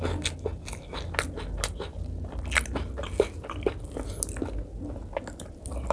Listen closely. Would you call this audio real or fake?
real